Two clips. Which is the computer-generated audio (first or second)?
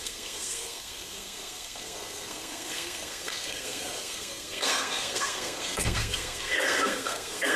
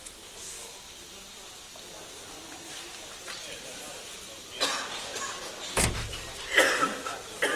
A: first